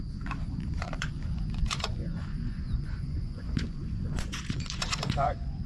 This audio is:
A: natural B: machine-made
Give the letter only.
B